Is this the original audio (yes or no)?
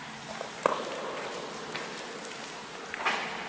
yes